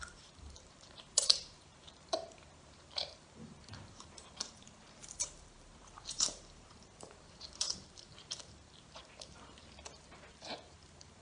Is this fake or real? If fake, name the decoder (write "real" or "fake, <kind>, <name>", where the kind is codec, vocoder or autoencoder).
fake, vocoder, BigVGAN v2